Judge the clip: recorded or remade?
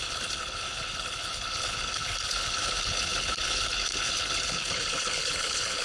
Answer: remade